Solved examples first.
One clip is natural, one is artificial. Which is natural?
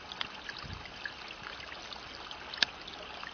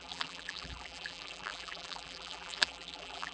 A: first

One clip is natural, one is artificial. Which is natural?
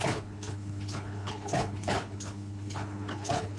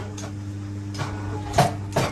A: second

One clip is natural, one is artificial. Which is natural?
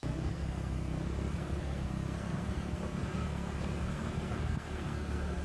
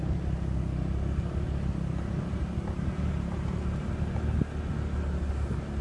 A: second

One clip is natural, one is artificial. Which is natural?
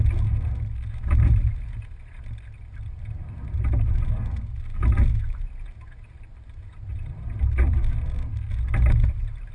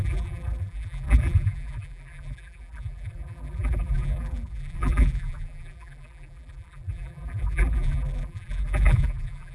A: first